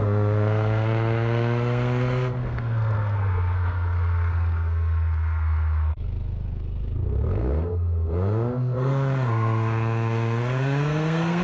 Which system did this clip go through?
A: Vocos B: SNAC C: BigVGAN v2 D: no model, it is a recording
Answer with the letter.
B